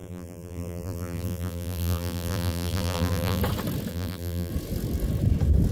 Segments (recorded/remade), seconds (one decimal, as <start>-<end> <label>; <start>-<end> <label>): 0.0-3.4 remade; 3.4-3.9 recorded; 3.9-4.5 remade; 4.5-5.7 recorded